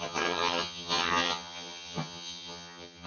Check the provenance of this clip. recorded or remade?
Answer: remade